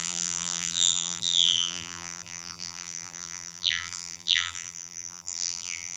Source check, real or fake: fake